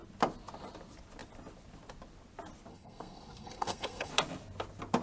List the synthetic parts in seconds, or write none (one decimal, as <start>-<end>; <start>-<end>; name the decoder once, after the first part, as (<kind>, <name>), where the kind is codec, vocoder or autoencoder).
2.7-4.1 (codec, SNAC)